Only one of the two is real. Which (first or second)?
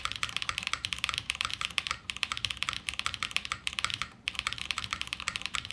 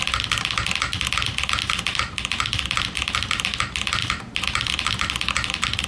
second